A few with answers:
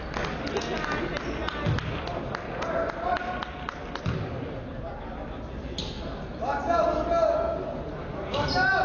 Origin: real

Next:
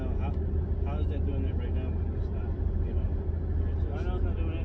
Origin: real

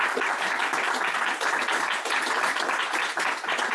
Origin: real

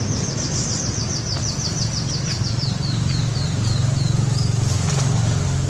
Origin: real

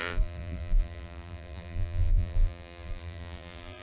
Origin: fake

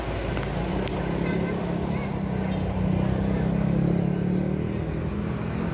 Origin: real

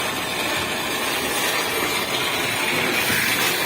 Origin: real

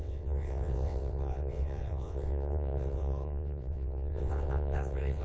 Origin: fake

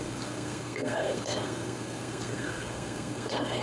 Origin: fake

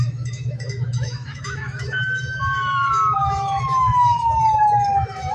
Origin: fake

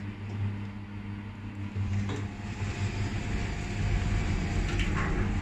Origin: real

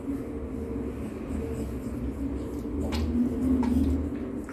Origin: real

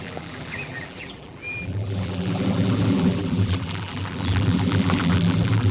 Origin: fake